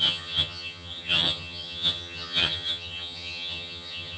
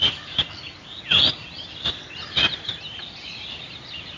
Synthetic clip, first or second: first